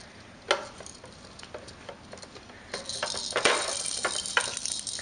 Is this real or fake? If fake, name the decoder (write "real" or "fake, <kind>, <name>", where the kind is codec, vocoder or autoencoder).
real